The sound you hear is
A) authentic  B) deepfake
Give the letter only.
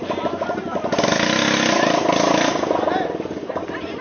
A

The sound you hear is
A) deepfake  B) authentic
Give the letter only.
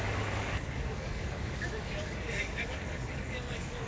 A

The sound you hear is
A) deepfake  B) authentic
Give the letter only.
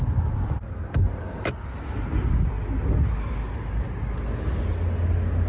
B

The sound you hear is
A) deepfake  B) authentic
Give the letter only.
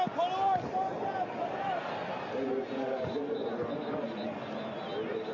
B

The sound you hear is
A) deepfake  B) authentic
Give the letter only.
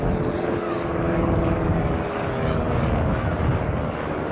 A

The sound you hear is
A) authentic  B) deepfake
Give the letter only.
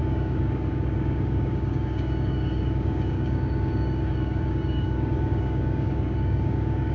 B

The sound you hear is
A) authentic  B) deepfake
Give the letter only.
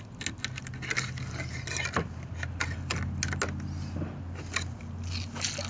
A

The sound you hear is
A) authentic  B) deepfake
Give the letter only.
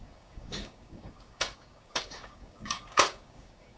B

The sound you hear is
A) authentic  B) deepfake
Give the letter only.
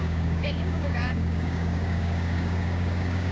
B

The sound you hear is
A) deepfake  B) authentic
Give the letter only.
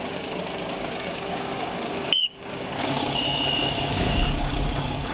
A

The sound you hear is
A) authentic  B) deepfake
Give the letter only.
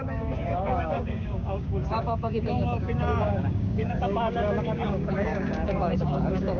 B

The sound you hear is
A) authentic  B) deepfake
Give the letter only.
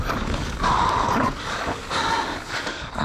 B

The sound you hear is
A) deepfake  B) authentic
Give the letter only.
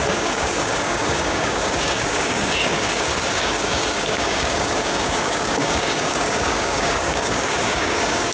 A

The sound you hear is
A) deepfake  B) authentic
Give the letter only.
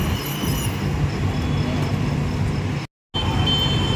B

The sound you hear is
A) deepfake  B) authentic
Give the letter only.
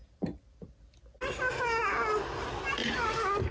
B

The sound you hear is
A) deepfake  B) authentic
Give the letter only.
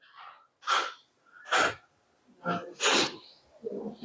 B